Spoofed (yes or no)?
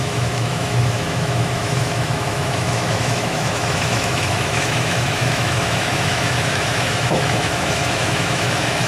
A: yes